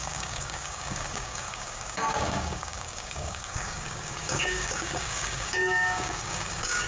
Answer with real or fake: fake